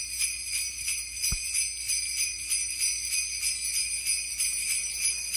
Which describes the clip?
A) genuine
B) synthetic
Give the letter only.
A